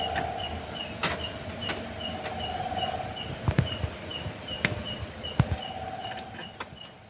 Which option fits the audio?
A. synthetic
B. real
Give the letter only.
B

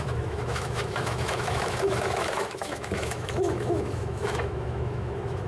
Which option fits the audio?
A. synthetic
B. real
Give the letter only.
A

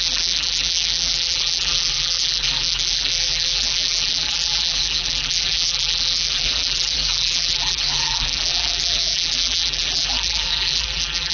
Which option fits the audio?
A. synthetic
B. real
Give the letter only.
A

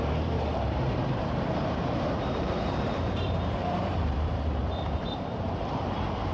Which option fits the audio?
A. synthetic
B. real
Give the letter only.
A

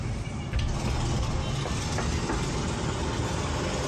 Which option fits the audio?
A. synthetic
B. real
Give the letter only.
B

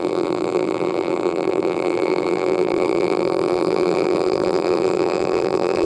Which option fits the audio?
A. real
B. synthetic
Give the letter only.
B